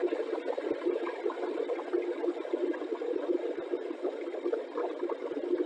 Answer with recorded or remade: recorded